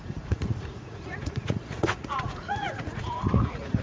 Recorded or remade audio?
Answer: remade